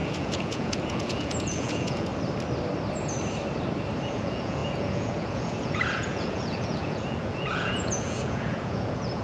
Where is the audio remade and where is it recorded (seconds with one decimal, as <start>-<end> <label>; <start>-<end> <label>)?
0.0-2.1 remade; 2.1-4.0 recorded; 4.0-9.2 remade